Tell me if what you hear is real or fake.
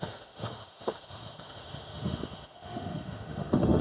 fake